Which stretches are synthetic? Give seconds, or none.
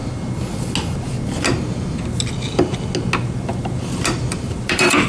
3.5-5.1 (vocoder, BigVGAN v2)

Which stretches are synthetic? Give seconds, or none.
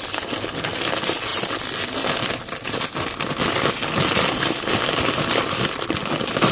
none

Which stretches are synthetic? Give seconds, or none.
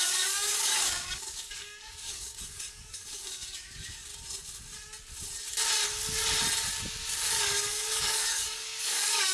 0.0-4.1 (codec, DAC); 7.3-9.3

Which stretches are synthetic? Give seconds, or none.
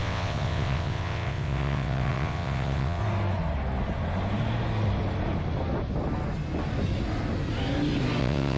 0.0-3.0 (vocoder, WaveNeXt); 8.2-8.6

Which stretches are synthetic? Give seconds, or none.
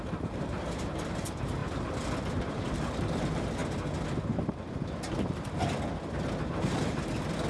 0.0-1.6 (vocoder, BigVGAN v2); 2.5-3.6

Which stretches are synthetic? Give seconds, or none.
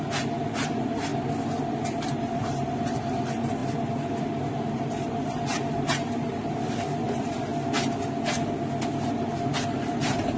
0.0-1.1 (vocoder, BigVGAN v2); 1.8-3.6; 4.2-7.5; 8.9-10.4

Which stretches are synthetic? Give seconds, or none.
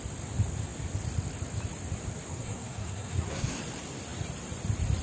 2.3-3.6 (codec, SNAC)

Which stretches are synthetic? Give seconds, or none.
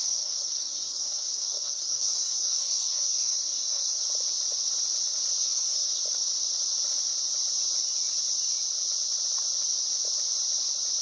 0.0-4.0 (codec, DAC); 5.4-6.0